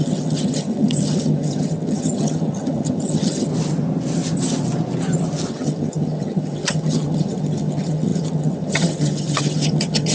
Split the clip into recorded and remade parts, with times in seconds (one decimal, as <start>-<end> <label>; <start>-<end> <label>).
0.0-3.5 remade; 3.5-5.5 recorded; 5.5-10.1 remade